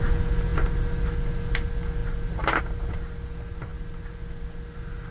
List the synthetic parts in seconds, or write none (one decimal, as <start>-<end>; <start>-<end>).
none